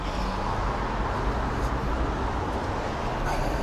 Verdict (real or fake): real